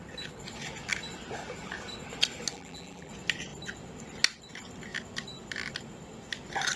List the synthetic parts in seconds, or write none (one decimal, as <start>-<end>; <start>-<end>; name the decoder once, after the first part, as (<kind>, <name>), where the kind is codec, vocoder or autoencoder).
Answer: 2.5-3.1 (vocoder, BigVGAN v2)